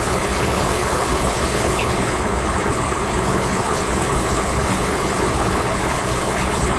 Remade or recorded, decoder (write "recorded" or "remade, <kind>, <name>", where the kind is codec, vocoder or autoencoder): remade, codec, HILCodec